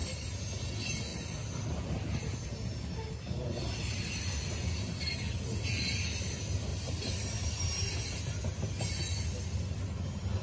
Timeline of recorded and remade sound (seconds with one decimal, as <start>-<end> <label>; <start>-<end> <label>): 0.0-0.7 remade; 0.7-6.7 recorded; 6.7-8.2 remade; 8.2-10.4 recorded

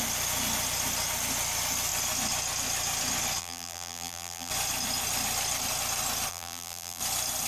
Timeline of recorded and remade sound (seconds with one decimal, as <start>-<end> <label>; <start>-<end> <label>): 0.0-3.4 recorded; 3.4-4.5 remade; 4.5-6.3 recorded; 6.3-7.0 remade; 7.0-7.5 recorded

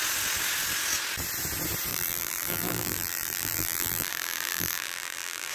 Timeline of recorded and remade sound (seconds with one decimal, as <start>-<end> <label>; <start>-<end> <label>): 0.0-1.9 recorded; 1.9-5.5 remade

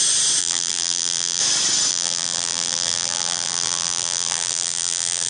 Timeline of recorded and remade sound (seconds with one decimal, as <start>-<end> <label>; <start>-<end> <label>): 0.0-0.4 recorded; 0.4-1.4 remade; 1.4-1.9 recorded; 1.9-5.3 remade

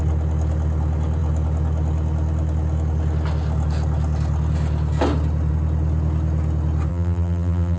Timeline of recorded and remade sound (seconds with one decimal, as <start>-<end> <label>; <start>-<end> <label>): 0.0-6.9 recorded; 6.9-7.8 remade

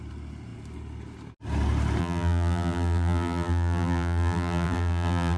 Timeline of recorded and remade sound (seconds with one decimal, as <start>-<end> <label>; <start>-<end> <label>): 0.0-2.0 recorded; 2.0-5.4 remade

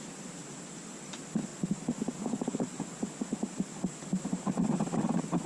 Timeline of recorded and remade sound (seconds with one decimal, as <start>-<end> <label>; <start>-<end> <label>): 0.0-1.5 recorded; 1.5-2.9 remade; 2.9-3.4 recorded; 3.4-4.5 remade; 4.5-5.5 recorded

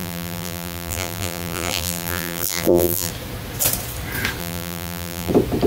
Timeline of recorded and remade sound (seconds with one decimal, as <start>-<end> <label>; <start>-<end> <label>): 0.0-3.1 remade; 3.1-4.4 recorded; 4.4-5.3 remade; 5.3-5.7 recorded